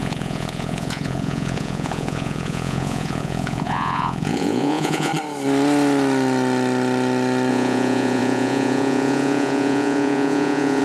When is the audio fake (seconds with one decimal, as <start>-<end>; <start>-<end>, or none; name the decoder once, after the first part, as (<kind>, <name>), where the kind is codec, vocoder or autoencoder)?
0.0-5.1 (vocoder, Vocos); 7.5-10.8